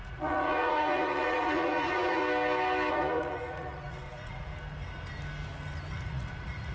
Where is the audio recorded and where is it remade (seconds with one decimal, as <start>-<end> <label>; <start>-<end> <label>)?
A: 0.0-2.2 remade; 2.2-2.9 recorded; 2.9-4.5 remade; 4.5-5.9 recorded; 5.9-6.7 remade